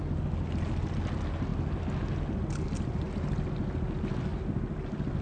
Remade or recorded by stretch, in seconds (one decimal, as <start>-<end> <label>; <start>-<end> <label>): 0.0-5.2 recorded

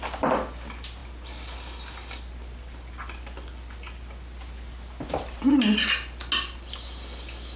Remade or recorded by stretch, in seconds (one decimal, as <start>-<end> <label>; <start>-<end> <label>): 0.0-7.6 recorded